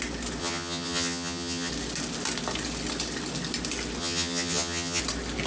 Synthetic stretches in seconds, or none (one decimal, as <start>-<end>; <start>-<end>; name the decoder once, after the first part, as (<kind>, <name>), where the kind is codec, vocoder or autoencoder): 0.4-1.7 (vocoder, HiFi-GAN); 4.0-5.0